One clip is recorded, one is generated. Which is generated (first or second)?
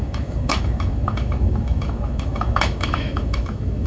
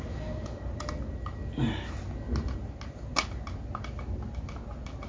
first